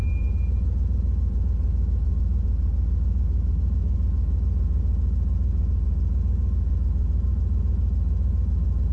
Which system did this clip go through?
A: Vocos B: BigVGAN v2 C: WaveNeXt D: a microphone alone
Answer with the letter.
D